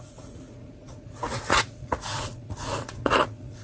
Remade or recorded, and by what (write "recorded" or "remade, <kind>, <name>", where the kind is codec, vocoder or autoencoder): remade, vocoder, Vocos